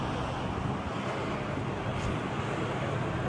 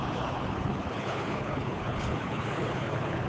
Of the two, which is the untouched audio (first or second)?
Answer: first